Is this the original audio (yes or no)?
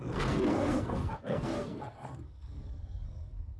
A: no